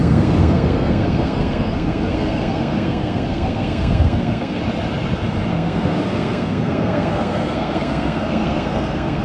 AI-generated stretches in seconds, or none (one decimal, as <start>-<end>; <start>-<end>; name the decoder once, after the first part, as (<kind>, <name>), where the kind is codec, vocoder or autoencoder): 0.0-4.6 (codec, SNAC); 5.5-9.2